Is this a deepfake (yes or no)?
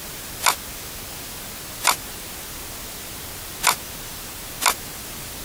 no